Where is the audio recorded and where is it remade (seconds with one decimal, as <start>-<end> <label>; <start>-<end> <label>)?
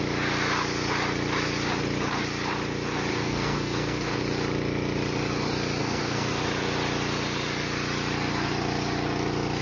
0.0-3.1 recorded; 3.1-4.2 remade; 4.2-5.8 recorded; 5.8-6.3 remade; 6.3-9.6 recorded